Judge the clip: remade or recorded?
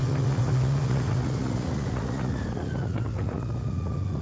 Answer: remade